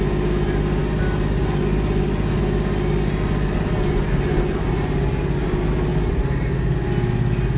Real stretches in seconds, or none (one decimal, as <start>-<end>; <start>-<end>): 0.0-7.6